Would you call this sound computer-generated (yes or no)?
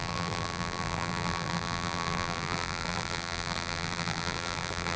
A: yes